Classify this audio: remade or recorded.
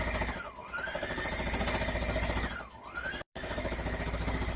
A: recorded